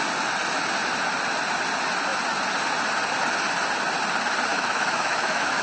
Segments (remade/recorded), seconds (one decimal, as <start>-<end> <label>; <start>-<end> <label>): 0.0-4.5 recorded; 4.5-5.6 remade